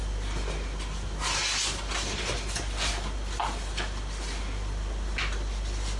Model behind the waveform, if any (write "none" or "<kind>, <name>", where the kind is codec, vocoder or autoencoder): none